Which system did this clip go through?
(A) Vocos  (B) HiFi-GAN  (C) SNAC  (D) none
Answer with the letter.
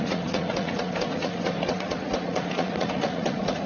A